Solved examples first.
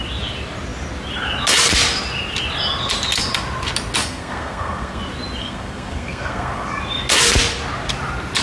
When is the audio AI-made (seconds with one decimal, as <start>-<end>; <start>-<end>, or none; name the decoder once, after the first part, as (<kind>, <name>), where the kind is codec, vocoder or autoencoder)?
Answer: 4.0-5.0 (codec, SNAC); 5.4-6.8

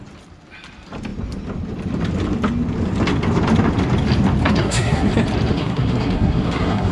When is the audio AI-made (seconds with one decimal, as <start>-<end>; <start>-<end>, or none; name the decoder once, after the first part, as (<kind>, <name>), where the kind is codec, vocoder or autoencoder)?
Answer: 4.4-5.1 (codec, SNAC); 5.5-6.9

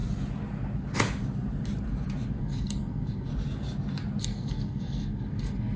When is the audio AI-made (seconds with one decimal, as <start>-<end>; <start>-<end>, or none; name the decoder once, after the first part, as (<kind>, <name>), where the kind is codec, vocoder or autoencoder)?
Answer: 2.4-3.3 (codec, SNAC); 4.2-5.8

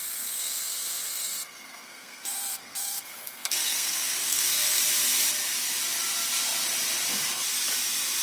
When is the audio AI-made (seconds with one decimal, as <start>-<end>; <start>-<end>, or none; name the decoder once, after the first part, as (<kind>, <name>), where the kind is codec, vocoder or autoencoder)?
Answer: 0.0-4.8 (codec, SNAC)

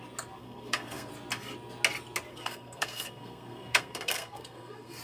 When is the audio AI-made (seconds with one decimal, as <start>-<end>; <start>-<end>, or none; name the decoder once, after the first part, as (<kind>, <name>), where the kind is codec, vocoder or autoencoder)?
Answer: 0.4-1.1 (codec, SNAC); 2.3-5.0

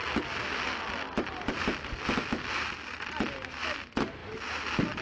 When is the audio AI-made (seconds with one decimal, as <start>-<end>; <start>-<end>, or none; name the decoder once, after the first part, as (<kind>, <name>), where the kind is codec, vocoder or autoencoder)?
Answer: none